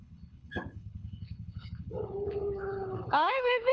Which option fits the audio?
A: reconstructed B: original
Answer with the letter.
A